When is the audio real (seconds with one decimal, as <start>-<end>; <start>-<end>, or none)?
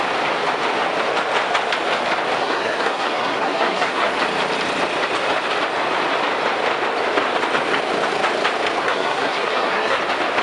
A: 0.0-2.4; 4.2-8.8; 10.0-10.4